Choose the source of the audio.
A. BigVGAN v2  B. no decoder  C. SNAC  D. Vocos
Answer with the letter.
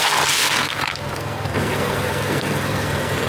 C